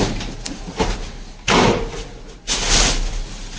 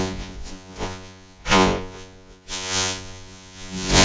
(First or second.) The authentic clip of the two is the first